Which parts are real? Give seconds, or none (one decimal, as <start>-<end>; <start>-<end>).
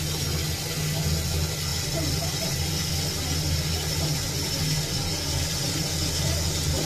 0.0-6.8